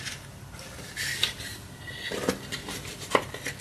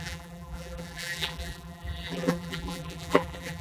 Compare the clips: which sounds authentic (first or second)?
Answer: first